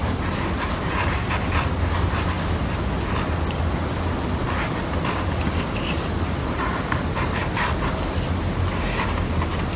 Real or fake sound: real